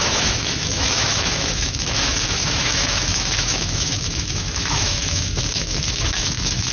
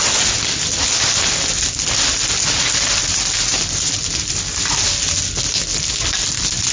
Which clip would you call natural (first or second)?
second